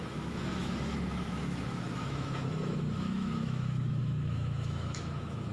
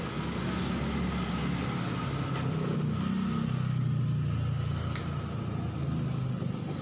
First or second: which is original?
second